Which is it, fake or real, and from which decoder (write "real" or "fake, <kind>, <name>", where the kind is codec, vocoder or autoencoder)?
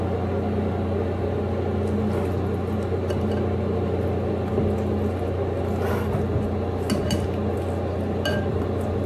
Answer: real